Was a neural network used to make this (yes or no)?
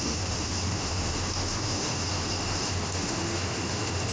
yes